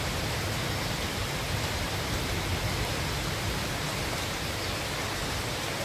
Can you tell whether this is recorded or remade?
recorded